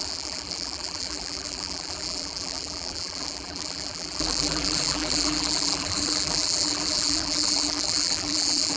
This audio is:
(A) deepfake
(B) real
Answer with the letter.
A